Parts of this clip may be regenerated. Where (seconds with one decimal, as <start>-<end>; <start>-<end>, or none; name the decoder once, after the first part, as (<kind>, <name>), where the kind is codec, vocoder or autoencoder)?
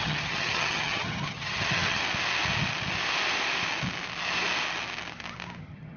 0.0-2.0 (vocoder, HiFi-GAN); 5.6-6.0